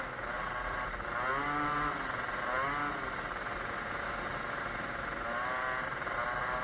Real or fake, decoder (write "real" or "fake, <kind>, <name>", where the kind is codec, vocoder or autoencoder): real